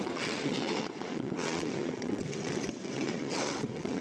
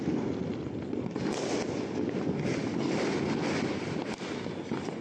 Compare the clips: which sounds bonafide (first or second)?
second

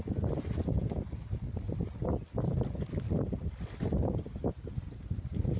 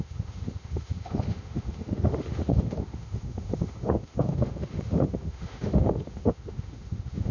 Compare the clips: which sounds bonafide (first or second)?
first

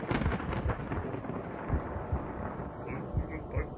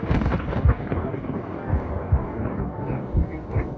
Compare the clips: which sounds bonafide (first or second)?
first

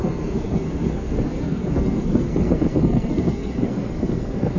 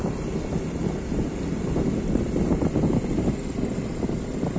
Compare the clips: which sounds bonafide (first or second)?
second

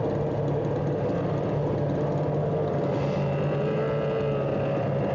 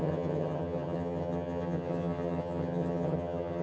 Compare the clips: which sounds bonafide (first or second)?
first